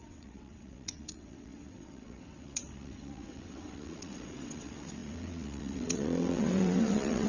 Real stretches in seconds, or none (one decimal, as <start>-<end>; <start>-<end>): none

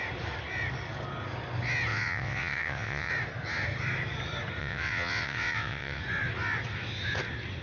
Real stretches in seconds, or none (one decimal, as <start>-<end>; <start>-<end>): 0.0-1.9; 3.1-4.6; 6.0-7.6

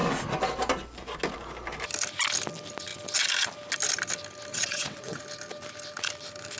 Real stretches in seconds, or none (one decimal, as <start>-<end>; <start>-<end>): 0.0-4.5; 5.2-6.6

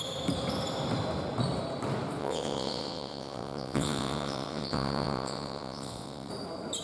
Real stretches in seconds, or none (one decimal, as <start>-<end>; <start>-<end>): 0.0-2.2; 6.3-6.8

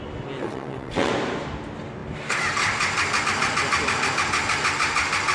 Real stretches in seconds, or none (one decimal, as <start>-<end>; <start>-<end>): 0.0-0.4; 1.1-5.3